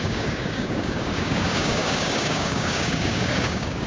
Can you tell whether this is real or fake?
fake